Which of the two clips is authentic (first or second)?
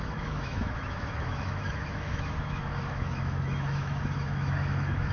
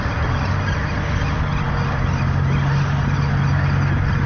second